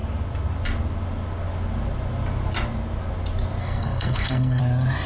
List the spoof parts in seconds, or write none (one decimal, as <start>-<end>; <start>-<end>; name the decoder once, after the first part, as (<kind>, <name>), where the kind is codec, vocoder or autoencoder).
3.6-4.6 (codec, SNAC)